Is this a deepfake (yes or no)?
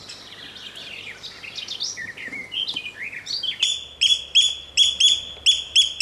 no